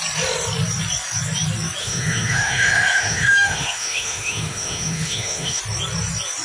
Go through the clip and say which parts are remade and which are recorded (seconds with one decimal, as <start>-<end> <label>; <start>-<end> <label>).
0.0-1.8 recorded; 1.8-5.6 remade; 5.6-6.4 recorded